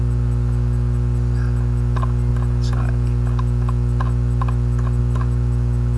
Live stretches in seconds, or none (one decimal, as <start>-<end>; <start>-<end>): 0.0-6.0